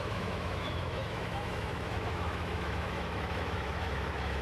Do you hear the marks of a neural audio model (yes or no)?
yes